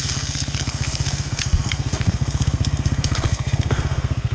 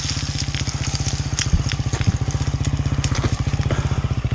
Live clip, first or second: second